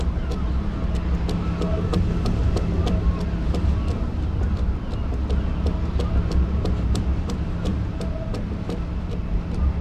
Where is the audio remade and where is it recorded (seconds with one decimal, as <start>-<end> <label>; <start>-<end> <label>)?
0.0-9.8 recorded